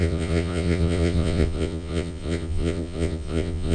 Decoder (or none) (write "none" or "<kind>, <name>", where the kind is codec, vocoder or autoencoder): vocoder, Vocos